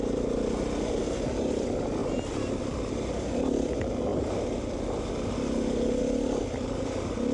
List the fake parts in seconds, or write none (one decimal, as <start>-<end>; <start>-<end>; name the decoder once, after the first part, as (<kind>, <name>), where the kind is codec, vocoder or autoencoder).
none